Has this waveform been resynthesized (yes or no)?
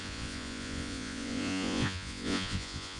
yes